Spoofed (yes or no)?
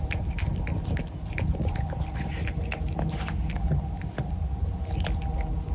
no